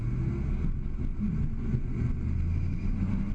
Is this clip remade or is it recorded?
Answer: recorded